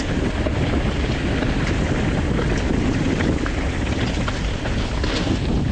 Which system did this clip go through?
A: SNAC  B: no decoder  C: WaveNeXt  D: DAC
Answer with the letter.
B